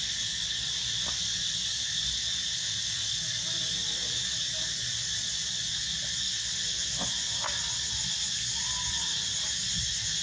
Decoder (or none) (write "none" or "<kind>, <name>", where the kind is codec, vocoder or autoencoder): none